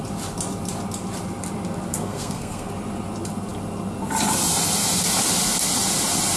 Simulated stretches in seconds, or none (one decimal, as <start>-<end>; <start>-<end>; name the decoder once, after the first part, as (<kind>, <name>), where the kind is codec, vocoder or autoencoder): 1.9-2.7 (codec, SNAC)